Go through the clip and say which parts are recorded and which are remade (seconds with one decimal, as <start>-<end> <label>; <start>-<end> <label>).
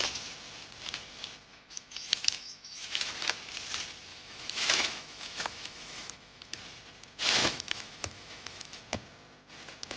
0.0-1.5 recorded; 1.5-3.1 remade; 3.1-4.1 recorded; 4.1-6.6 remade; 6.6-7.4 recorded; 7.4-8.8 remade; 8.8-10.0 recorded